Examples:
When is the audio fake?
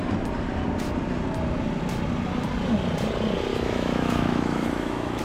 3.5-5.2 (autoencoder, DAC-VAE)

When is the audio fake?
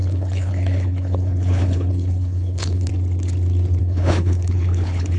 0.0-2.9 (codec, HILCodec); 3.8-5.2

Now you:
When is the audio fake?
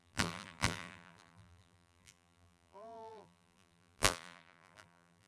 0.0-5.3 (vocoder, BigVGAN v2)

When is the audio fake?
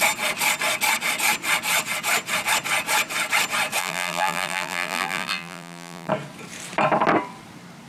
3.8-6.1 (vocoder, BigVGAN v2)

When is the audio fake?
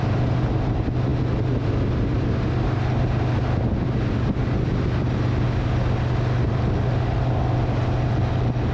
none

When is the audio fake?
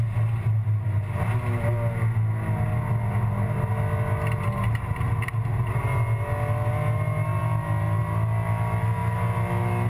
none